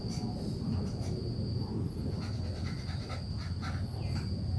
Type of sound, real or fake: real